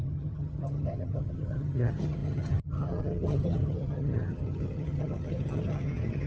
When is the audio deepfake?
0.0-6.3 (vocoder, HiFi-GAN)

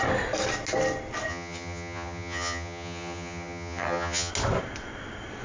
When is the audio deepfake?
1.3-4.3 (vocoder, HiFi-GAN)